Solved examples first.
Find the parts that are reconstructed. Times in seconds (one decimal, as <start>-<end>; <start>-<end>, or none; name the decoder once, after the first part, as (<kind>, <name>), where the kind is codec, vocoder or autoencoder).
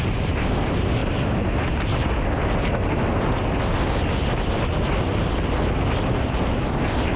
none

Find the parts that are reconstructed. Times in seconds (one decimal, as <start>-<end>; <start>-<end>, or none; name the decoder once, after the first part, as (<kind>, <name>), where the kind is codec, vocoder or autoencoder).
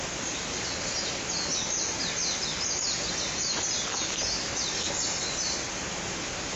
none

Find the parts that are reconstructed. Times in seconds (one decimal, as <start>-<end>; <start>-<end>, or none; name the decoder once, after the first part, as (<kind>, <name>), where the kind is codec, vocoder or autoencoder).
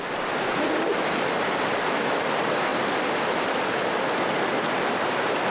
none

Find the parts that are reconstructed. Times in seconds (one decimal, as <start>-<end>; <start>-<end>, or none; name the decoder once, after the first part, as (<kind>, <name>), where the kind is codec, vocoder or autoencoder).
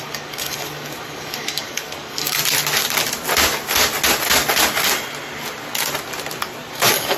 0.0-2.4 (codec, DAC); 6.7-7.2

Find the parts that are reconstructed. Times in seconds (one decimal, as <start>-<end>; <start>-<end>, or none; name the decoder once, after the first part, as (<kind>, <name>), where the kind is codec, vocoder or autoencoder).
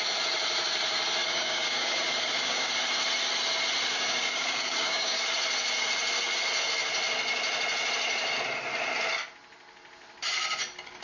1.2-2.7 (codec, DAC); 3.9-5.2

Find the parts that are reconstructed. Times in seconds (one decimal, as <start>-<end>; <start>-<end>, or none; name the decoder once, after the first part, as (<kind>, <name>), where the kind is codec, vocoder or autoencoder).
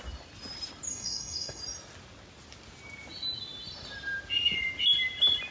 0.9-1.6 (codec, DAC)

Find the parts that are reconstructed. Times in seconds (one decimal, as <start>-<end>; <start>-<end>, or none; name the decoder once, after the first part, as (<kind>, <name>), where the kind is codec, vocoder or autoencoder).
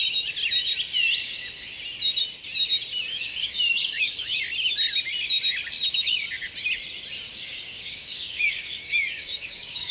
3.1-4.4 (codec, DAC); 7.3-9.9